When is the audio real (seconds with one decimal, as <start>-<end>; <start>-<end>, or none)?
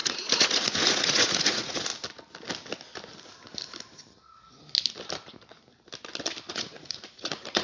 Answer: 1.9-6.5